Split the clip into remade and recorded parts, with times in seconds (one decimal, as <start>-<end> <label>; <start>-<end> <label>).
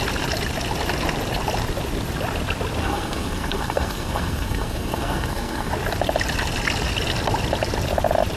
0.0-2.8 recorded; 2.8-5.7 remade; 5.7-8.4 recorded